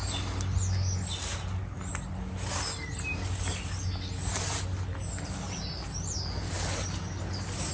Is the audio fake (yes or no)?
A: no